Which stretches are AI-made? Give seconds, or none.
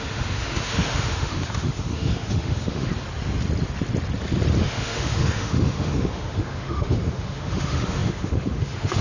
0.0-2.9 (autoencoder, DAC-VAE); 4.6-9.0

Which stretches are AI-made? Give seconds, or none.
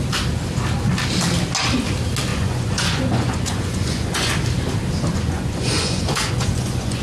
2.3-4.3 (vocoder, Vocos); 5.1-7.0